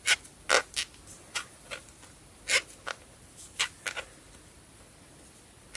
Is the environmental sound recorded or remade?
recorded